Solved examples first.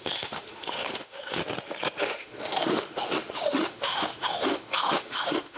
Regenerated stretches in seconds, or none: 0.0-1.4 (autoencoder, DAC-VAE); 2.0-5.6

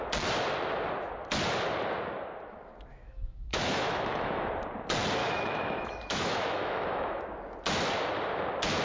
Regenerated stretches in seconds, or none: 2.9-4.5 (autoencoder, DAC-VAE); 5.2-7.2

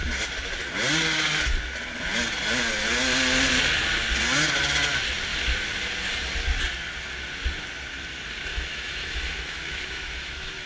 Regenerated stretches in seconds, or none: 8.5-10.7 (autoencoder, DAC-VAE)

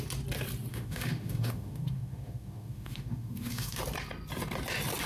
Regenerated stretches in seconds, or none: 0.7-3.8 (autoencoder, DAC-VAE)

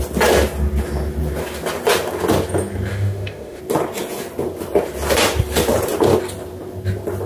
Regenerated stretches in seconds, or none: 2.9-3.6 (autoencoder, DAC-VAE)

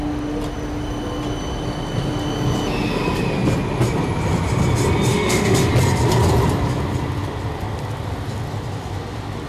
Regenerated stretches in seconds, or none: 5.1-5.7 (autoencoder, DAC-VAE)